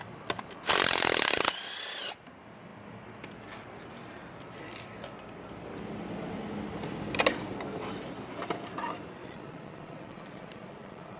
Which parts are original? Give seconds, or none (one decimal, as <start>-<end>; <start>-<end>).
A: 0.0-9.2